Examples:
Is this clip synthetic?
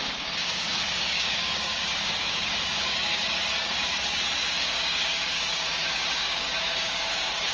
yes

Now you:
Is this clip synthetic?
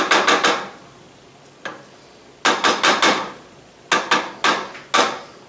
no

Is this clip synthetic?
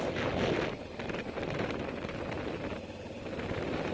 no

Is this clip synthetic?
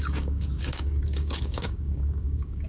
yes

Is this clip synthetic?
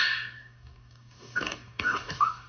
yes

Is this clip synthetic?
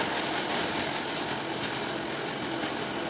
no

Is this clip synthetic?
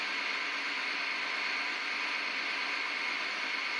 no